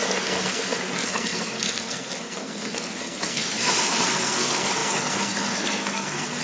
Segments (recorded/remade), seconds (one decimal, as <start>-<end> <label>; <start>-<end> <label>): 0.0-6.4 remade

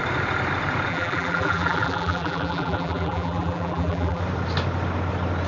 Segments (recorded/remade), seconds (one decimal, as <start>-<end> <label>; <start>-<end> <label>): 0.0-0.9 recorded; 0.9-4.2 remade; 4.2-5.5 recorded

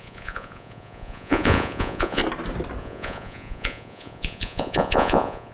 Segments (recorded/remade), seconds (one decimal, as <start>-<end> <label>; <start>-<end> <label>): 0.0-2.2 remade; 2.2-2.8 recorded; 2.8-5.5 remade

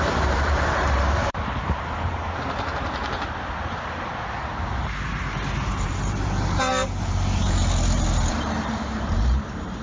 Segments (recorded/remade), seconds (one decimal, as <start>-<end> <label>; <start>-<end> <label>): 0.0-3.0 remade; 3.0-3.7 recorded; 3.7-9.8 remade

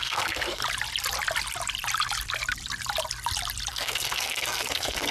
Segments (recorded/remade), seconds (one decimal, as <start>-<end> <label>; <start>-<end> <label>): 0.0-0.6 remade; 0.6-3.7 recorded; 3.7-5.1 remade

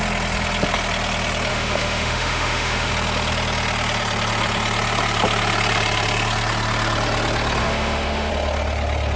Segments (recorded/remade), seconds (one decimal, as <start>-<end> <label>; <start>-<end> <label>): 0.0-1.5 recorded; 1.5-2.9 remade; 2.9-7.6 recorded; 7.6-8.3 remade; 8.3-9.2 recorded

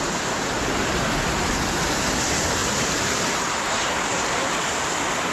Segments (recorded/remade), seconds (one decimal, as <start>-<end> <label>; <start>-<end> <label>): 0.0-0.8 recorded; 0.8-1.5 remade; 1.5-2.6 recorded; 2.6-4.8 remade; 4.8-5.3 recorded